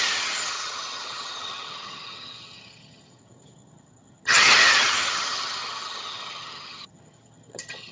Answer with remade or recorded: remade